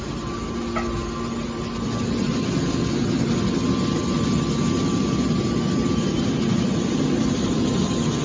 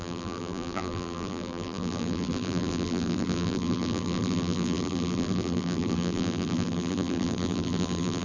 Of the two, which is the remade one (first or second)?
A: second